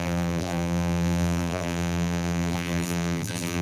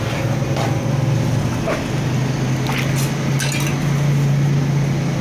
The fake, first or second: first